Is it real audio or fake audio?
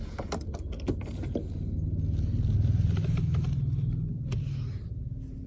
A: real